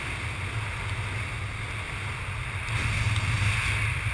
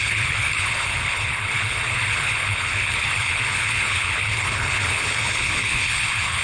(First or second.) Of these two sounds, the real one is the first